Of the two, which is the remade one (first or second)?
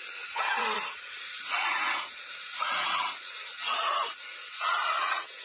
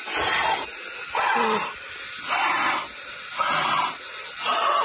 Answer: first